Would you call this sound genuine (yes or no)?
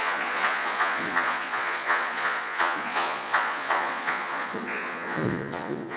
no